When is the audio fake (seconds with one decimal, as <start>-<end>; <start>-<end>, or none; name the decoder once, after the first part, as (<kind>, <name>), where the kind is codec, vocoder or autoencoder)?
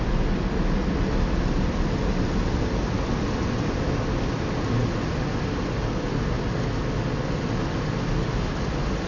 none